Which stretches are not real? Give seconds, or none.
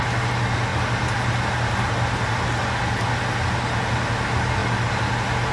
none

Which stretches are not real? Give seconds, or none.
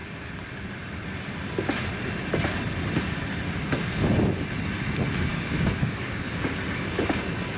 5.3-6.6 (codec, DAC)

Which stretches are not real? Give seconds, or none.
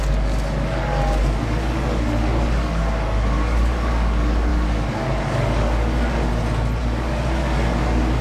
0.0-6.3 (codec, DAC); 6.8-8.2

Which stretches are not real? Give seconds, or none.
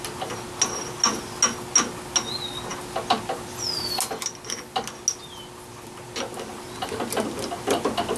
none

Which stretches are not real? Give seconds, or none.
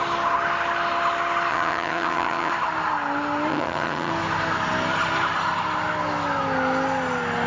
1.5-2.5 (vocoder, HiFi-GAN); 3.5-4.1